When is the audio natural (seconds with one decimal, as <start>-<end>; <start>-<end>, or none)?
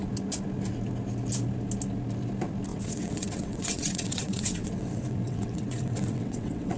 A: 0.0-2.7